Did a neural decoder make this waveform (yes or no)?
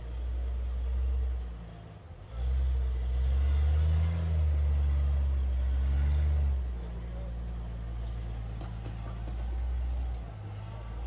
no